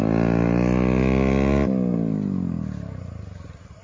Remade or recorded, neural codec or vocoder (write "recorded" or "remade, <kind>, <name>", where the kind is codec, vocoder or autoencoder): recorded